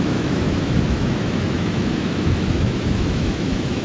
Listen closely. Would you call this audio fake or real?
fake